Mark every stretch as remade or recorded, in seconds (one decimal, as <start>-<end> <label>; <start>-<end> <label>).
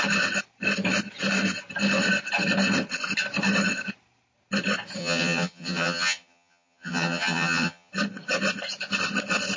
0.0-5.0 recorded; 5.0-7.9 remade; 7.9-9.6 recorded